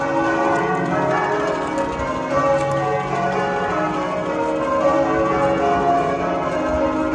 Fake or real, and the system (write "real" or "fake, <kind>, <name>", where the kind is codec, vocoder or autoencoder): real